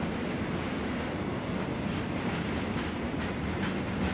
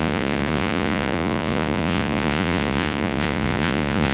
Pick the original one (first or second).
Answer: first